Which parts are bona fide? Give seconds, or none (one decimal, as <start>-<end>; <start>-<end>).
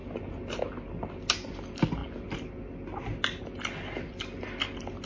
0.0-5.1